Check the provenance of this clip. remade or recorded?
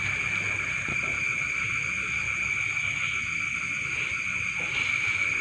recorded